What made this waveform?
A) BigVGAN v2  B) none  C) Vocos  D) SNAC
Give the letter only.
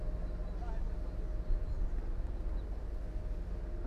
B